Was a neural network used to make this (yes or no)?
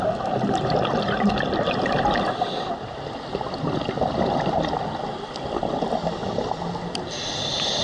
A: no